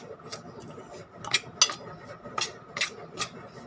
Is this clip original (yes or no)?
yes